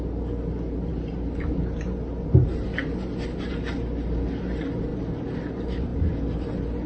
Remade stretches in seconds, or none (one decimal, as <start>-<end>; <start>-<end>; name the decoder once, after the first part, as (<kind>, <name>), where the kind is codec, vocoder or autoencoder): none